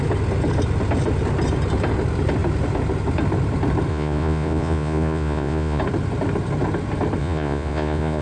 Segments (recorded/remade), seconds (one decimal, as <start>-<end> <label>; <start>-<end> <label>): 0.0-3.9 recorded; 3.9-5.8 remade; 5.8-7.2 recorded; 7.2-8.2 remade